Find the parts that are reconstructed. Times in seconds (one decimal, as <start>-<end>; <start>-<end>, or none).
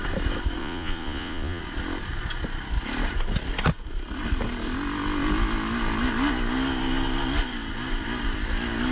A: 0.6-1.6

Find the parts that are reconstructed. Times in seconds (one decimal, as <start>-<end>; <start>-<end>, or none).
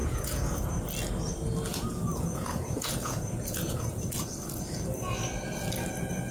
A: 0.0-0.7; 1.7-3.9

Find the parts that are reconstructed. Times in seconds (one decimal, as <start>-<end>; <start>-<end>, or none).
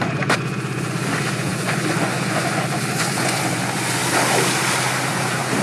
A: 0.0-4.0; 5.1-5.6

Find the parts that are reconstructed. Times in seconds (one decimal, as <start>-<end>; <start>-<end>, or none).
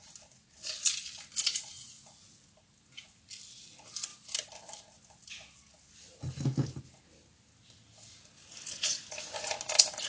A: none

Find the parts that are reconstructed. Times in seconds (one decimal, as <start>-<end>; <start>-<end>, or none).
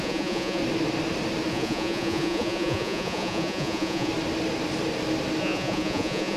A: 0.0-0.6; 1.5-4.1; 5.4-6.4